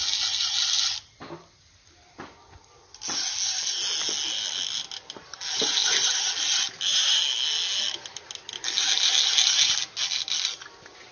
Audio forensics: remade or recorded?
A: recorded